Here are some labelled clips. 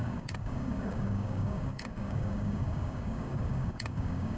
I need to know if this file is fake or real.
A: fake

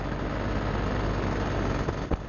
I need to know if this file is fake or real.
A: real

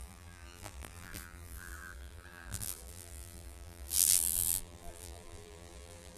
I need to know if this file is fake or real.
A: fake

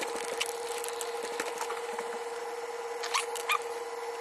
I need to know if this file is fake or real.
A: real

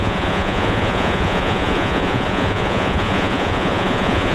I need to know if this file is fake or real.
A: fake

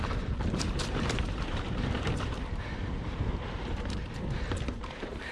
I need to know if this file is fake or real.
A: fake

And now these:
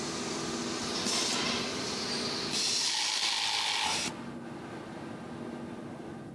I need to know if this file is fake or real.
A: real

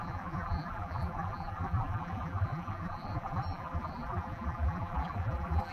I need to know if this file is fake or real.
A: fake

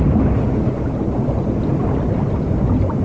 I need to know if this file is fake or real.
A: real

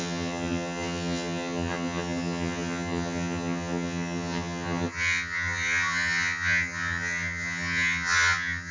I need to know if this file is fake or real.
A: fake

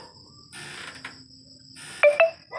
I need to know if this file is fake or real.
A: real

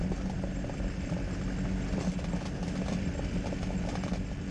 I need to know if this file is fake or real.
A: real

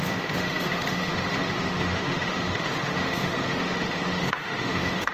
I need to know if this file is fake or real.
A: fake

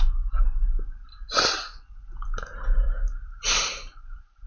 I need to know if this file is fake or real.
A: fake